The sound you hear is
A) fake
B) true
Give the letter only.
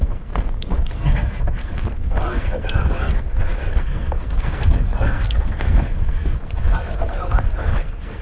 A